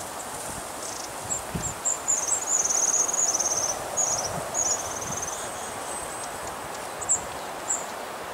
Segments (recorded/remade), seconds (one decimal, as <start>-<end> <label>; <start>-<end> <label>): 0.0-8.3 recorded